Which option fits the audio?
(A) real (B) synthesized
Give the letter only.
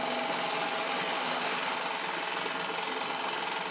A